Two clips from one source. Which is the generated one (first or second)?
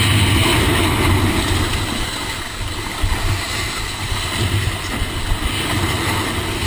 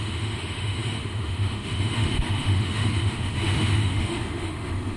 second